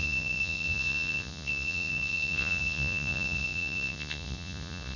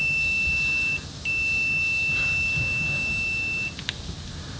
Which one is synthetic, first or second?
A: first